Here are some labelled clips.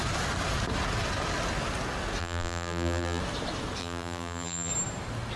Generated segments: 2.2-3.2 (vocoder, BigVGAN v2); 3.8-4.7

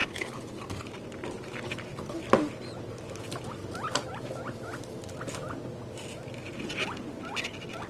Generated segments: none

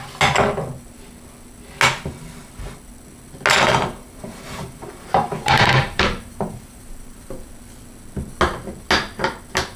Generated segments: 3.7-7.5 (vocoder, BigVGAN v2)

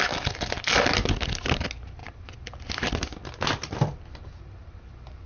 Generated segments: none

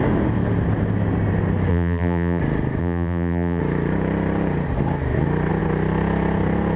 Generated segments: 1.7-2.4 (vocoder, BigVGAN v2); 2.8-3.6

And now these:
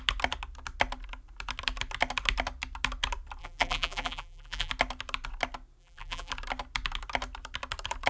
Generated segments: 3.4-4.7 (vocoder, BigVGAN v2); 5.8-6.3